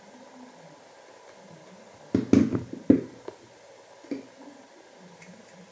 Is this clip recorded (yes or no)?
yes